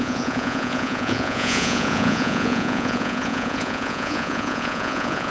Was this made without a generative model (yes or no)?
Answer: no